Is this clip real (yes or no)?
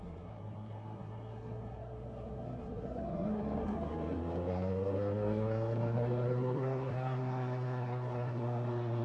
no